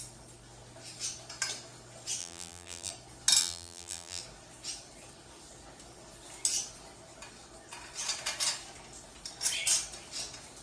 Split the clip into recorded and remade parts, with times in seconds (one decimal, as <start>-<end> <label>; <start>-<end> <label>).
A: 0.0-2.2 recorded; 2.2-2.9 remade; 2.9-3.4 recorded; 3.4-4.2 remade; 4.2-10.6 recorded